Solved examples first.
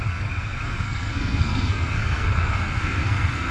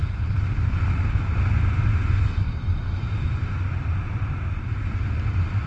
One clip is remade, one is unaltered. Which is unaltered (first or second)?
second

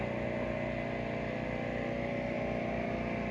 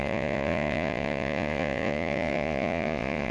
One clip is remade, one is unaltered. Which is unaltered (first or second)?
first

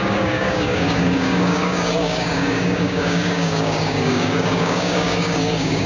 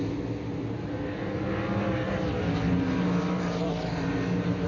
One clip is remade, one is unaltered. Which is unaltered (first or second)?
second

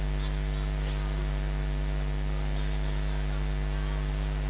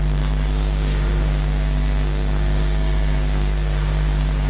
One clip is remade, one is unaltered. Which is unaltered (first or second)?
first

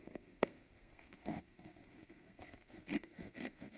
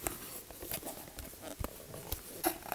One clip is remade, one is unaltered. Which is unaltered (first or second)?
second